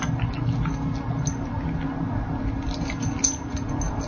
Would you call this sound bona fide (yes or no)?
yes